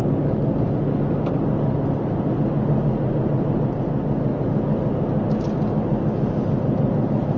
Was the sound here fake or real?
real